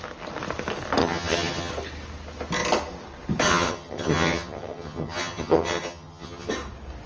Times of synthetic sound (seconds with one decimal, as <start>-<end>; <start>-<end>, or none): 1.0-1.7; 3.5-6.5